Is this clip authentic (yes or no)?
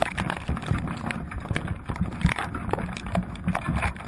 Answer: yes